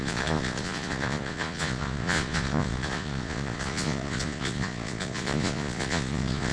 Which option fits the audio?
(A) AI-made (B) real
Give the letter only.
A